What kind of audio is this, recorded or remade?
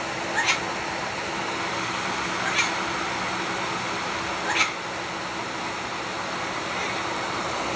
recorded